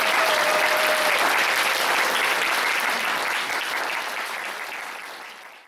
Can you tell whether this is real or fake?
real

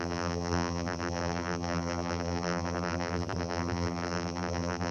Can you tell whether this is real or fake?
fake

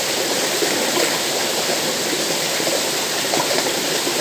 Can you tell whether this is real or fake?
fake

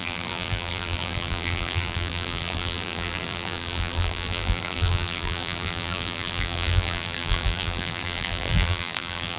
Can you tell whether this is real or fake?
fake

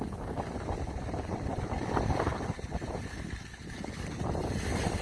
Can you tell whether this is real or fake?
real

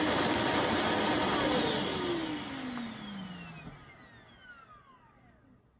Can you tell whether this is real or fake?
real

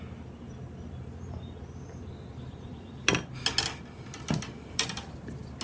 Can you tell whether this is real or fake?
real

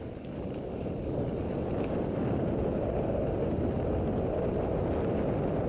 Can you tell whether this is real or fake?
real